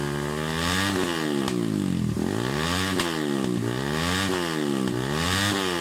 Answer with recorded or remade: recorded